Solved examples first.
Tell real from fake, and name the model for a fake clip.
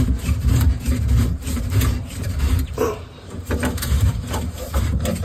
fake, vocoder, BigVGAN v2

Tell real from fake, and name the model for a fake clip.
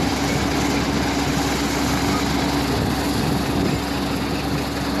real